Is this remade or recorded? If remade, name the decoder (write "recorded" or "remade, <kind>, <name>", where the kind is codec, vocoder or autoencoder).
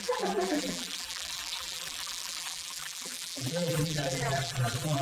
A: remade, vocoder, BigVGAN v2